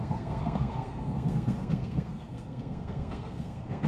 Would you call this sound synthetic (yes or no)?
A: yes